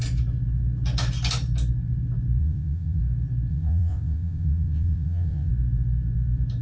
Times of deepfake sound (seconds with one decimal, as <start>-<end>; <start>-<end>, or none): 2.4-3.0; 3.5-5.5